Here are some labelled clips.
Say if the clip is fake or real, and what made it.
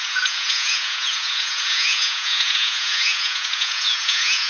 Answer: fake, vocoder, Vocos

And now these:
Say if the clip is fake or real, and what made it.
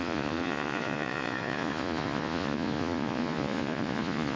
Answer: fake, vocoder, Vocos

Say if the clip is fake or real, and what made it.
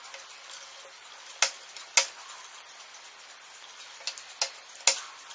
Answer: real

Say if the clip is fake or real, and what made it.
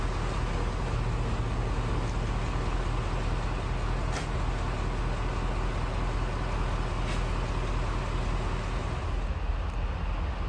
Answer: real